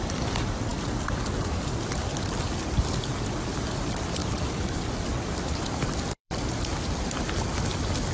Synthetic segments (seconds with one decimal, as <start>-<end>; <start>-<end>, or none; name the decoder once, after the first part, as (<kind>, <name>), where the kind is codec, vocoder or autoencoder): 4.2-7.2 (vocoder, BigVGAN v2)